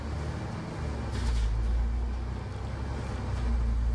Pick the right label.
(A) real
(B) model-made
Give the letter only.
A